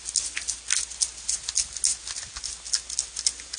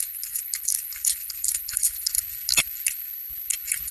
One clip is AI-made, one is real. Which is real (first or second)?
first